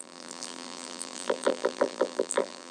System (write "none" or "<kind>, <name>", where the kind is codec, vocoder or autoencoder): vocoder, BigVGAN v2